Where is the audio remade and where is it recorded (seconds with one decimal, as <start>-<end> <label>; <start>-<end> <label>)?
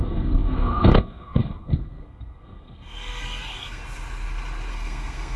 0.0-3.8 remade; 3.8-4.7 recorded; 4.7-5.4 remade